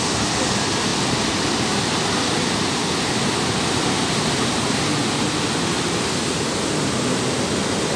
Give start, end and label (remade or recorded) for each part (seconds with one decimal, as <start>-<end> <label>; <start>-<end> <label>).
0.0-8.0 recorded